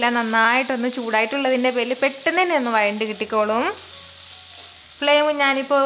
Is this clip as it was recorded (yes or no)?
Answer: yes